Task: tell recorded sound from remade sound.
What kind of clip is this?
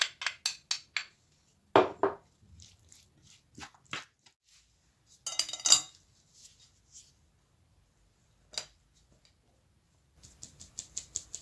recorded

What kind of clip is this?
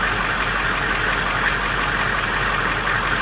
recorded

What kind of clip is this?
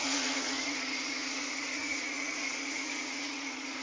remade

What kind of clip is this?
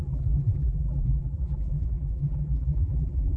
remade